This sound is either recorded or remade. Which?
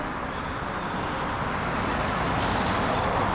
recorded